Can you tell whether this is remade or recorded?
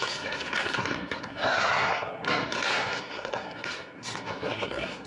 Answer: remade